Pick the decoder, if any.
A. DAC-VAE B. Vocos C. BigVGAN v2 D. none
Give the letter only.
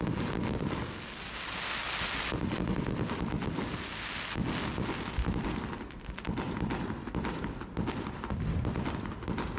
D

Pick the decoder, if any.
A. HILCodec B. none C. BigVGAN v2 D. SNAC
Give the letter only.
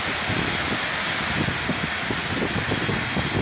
C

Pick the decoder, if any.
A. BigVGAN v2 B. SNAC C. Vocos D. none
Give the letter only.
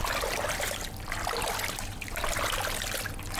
D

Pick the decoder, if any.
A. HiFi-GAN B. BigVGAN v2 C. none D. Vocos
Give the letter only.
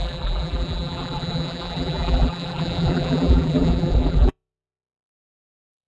B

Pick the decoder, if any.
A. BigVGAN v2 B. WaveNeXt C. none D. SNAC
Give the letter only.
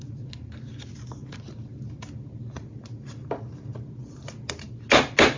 C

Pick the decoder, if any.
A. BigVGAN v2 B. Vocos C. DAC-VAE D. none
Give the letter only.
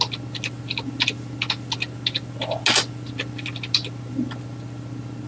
D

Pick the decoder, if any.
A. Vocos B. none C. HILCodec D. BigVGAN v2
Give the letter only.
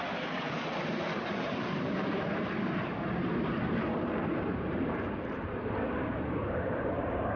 D